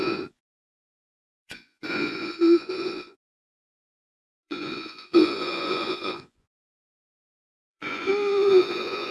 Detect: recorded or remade remade